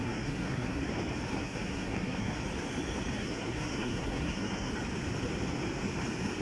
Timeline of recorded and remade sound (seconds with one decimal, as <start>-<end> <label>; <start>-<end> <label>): 0.0-0.9 remade; 0.9-1.3 recorded; 1.3-2.4 remade; 2.4-3.2 recorded; 3.2-4.7 remade; 4.7-6.4 recorded